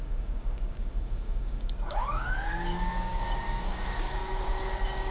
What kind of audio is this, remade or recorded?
remade